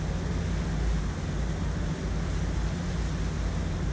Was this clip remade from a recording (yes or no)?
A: no